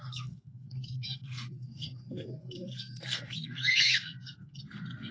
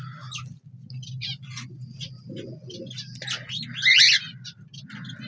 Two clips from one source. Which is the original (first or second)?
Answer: second